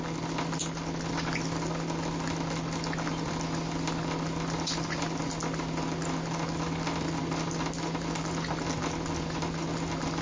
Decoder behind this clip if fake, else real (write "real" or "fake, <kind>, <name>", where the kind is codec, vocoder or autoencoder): real